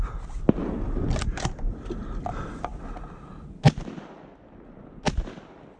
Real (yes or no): yes